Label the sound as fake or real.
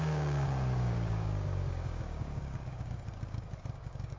fake